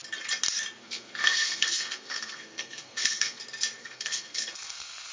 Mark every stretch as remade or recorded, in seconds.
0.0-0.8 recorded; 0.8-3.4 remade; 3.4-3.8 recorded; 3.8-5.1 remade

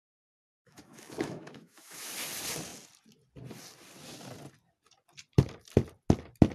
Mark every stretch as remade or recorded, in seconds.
0.0-0.4 recorded; 0.4-2.1 remade; 2.1-6.5 recorded